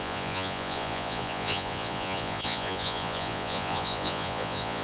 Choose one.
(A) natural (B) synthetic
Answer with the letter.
B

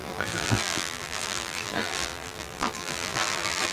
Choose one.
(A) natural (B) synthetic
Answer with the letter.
B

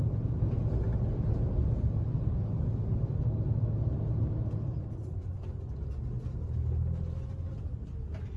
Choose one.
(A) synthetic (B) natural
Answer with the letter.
B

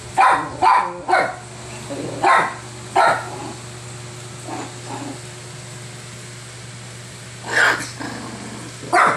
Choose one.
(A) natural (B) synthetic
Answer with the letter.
A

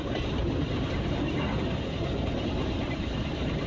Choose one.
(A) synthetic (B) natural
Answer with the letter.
A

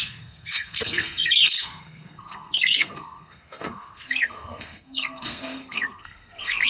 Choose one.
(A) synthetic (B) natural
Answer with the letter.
A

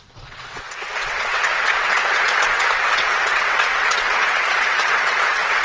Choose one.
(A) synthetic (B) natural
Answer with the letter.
A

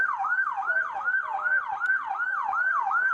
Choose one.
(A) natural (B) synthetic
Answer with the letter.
A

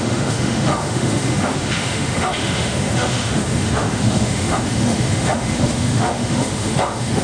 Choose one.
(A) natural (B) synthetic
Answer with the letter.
B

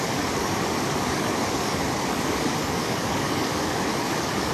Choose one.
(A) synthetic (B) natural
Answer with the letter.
A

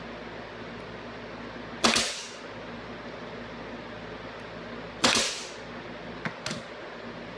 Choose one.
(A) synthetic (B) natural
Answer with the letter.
B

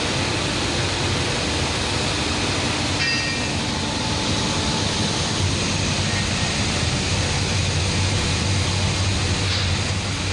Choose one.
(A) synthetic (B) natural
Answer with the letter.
B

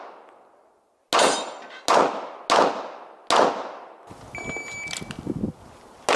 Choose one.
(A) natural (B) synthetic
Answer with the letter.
A